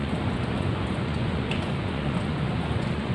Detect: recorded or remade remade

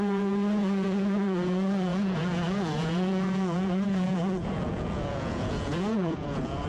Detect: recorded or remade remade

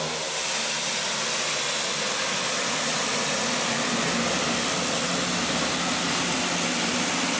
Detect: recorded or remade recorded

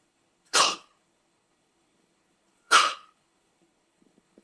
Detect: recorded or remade remade